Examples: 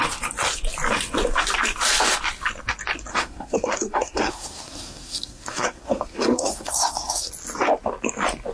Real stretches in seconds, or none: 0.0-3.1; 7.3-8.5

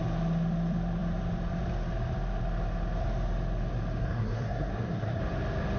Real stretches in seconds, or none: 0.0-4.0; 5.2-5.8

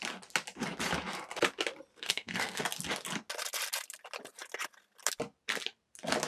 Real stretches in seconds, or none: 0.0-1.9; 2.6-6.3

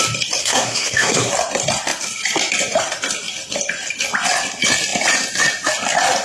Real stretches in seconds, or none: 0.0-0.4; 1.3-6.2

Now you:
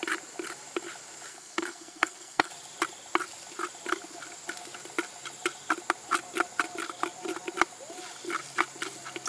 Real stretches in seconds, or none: 0.0-1.3; 2.5-9.3

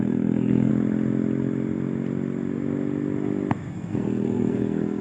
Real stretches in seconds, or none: 0.7-3.7